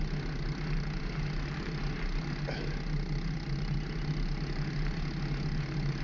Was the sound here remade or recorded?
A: recorded